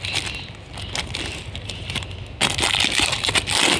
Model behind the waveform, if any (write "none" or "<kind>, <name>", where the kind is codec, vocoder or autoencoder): none